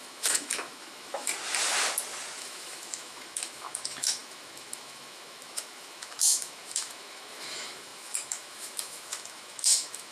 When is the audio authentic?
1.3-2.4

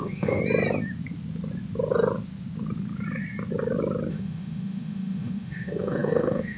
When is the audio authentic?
0.4-4.1